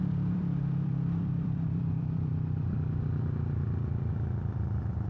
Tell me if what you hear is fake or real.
fake